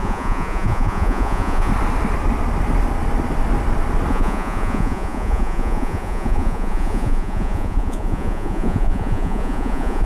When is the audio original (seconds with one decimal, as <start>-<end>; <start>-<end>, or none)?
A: 1.7-4.1